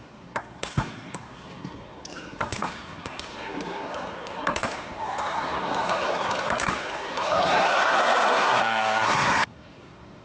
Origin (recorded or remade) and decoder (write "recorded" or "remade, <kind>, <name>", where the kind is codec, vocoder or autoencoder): remade, codec, SNAC